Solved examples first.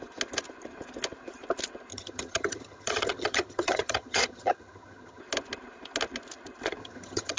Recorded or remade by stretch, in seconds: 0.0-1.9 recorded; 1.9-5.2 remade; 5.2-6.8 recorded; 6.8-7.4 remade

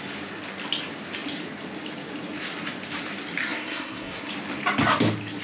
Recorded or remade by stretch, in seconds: 0.0-3.4 recorded; 3.4-4.3 remade; 4.3-5.4 recorded

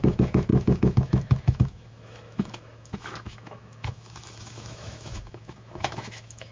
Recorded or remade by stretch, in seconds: 0.0-6.5 remade

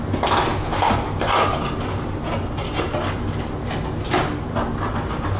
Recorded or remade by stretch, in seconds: 0.0-5.4 recorded

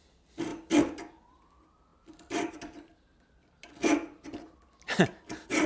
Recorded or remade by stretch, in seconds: 0.0-5.7 recorded

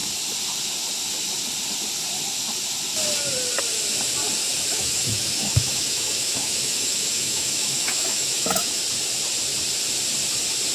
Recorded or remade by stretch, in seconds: 0.0-4.7 recorded; 4.7-8.8 remade; 8.8-10.7 recorded